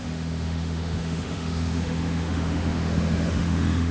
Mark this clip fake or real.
fake